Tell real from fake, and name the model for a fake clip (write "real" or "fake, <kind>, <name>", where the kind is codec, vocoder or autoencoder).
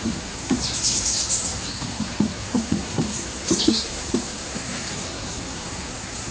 fake, codec, SNAC